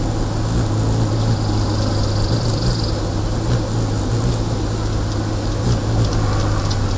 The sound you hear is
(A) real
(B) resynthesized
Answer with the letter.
A